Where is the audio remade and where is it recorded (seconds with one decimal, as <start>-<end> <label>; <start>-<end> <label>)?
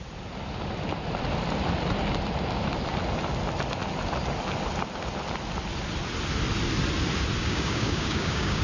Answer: 0.0-7.4 recorded; 7.4-8.6 remade